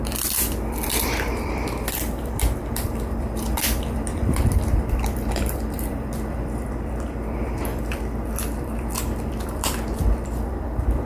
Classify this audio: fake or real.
fake